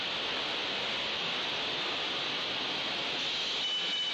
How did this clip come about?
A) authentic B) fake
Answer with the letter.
A